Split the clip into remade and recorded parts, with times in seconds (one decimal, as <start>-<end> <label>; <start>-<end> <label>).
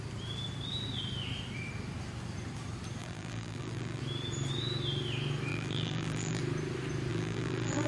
0.0-3.0 recorded; 3.0-4.0 remade; 4.0-5.5 recorded; 5.5-6.4 remade; 6.4-7.1 recorded; 7.1-7.9 remade